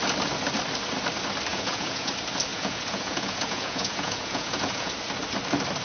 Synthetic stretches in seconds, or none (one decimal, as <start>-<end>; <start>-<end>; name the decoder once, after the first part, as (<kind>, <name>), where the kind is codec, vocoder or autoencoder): 1.5-2.1 (vocoder, Vocos); 2.5-4.9

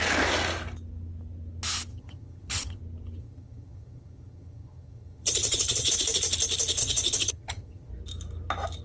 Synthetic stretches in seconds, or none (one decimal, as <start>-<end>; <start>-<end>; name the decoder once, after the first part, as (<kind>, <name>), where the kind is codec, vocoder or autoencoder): 1.9-2.8 (vocoder, HiFi-GAN); 3.2-5.9; 6.8-7.9

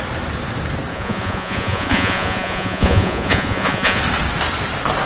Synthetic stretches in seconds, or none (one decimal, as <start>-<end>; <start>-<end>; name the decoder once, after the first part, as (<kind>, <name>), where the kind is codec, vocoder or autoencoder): 0.9-4.0 (vocoder, Vocos)

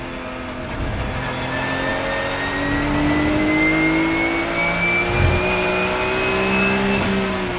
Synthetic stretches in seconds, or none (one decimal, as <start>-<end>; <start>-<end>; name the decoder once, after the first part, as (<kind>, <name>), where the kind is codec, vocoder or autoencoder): none

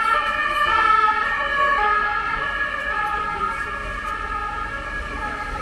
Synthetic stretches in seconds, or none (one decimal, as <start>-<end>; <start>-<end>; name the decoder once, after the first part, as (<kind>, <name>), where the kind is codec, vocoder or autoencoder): 0.0-0.4 (vocoder, BigVGAN v2); 2.4-4.4; 5.0-5.6

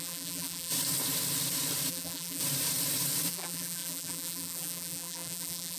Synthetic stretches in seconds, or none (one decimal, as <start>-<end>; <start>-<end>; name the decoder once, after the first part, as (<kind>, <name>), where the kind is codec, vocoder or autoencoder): 0.0-0.7 (vocoder, BigVGAN v2); 1.9-2.4; 3.3-5.8

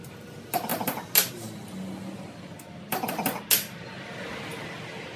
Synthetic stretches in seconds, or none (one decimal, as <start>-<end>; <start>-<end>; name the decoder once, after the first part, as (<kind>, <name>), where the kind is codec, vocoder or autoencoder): none

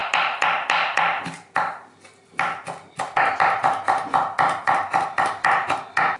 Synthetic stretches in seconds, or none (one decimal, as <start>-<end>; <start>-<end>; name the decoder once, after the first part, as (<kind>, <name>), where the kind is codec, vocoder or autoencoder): none